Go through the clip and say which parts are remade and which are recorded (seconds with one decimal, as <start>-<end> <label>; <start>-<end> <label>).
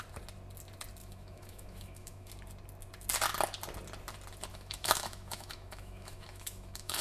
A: 0.0-1.0 recorded; 1.0-2.3 remade; 2.3-4.5 recorded; 4.5-7.0 remade